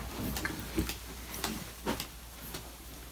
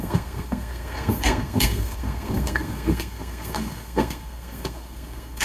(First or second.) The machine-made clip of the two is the second